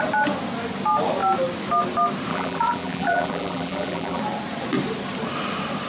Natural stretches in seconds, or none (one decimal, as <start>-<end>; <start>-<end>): 0.0-2.3; 4.2-5.9